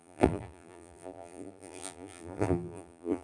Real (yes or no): no